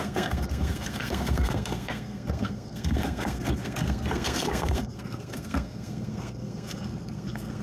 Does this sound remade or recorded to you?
remade